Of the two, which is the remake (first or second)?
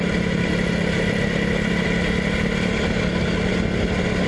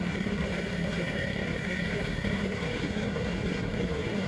second